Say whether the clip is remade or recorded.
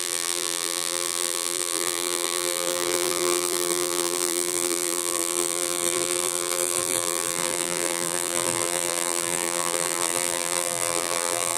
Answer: remade